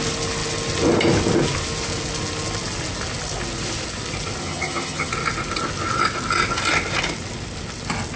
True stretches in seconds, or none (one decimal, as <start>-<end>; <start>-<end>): 0.0-4.4; 5.1-8.2